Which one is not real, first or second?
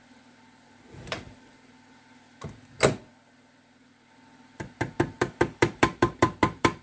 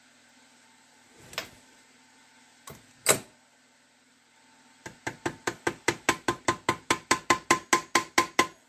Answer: first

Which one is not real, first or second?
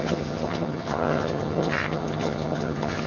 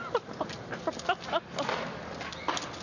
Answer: first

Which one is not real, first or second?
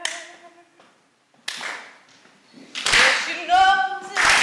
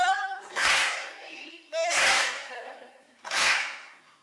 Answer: second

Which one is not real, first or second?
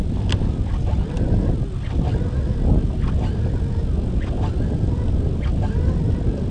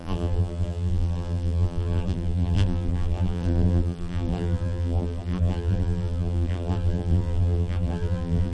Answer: second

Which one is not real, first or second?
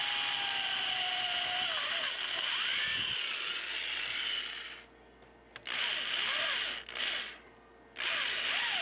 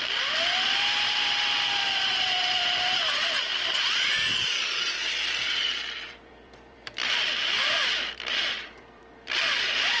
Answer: second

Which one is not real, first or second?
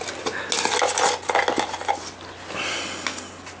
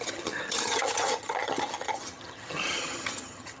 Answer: second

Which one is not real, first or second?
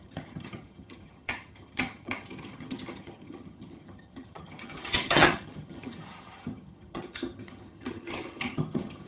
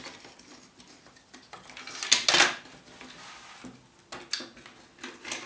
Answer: first